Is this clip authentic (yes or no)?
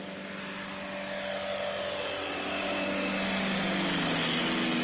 yes